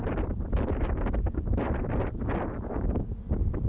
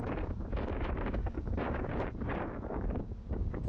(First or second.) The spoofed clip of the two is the second